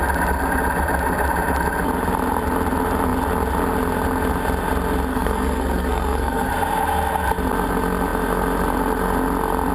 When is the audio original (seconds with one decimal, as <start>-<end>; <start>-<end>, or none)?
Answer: 0.0-5.1; 6.5-9.7